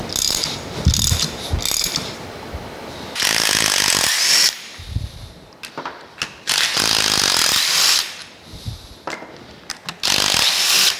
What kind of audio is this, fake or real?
real